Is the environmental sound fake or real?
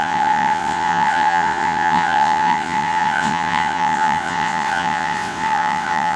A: fake